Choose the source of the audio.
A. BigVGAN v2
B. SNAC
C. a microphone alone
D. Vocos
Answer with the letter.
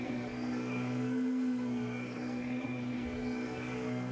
B